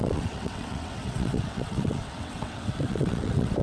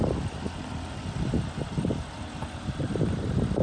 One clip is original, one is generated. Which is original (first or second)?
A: second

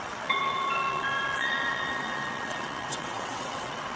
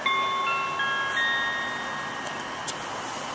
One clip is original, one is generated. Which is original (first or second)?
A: second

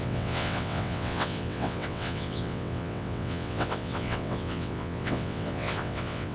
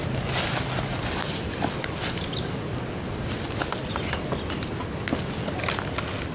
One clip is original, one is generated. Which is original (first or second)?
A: second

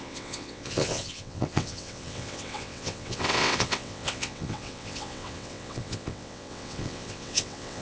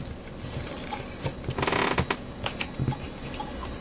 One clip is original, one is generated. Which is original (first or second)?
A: second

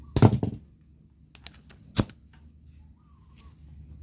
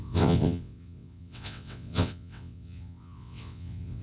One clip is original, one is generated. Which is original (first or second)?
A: first